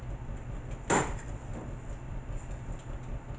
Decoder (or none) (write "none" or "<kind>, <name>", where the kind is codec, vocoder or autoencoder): none